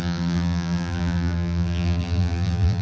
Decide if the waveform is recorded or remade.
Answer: remade